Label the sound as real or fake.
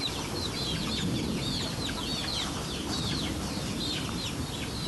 real